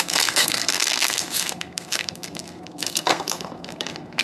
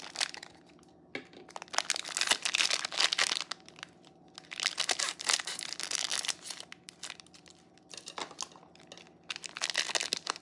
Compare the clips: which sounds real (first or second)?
second